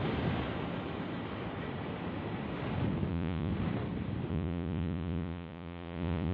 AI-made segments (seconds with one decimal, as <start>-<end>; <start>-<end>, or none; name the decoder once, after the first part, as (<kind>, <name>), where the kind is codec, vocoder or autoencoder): 3.1-3.5 (vocoder, Vocos); 4.3-6.3